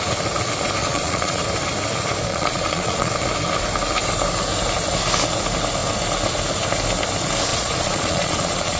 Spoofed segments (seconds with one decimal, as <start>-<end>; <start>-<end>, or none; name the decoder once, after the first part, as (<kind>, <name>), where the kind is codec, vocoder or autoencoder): 0.8-1.4 (vocoder, Vocos); 2.3-3.1; 7.5-8.8